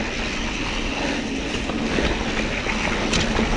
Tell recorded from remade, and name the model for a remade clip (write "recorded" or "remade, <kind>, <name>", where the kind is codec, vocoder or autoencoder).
recorded